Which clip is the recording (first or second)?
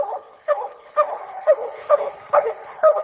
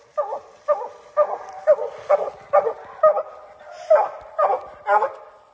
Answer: second